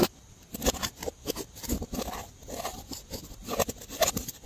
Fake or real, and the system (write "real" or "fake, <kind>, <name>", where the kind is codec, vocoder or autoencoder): real